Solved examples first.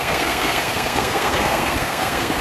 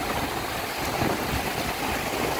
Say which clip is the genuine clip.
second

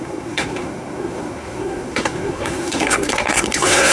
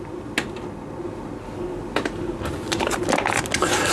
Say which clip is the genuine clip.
second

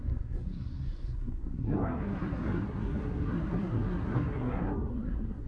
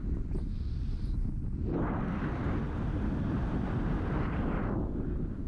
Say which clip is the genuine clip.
second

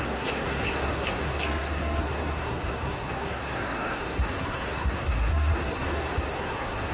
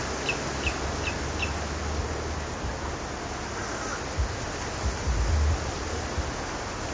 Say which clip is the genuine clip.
second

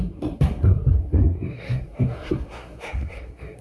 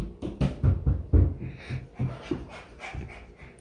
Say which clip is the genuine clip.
second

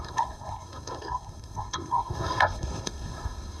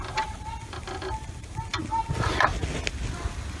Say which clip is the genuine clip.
second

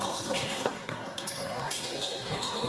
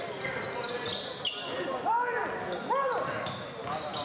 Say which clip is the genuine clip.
second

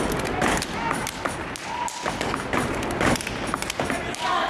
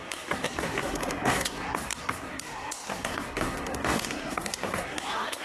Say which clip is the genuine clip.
first